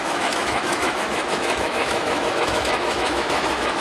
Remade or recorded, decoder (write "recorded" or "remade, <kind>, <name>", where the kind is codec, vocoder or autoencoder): remade, autoencoder, DAC-VAE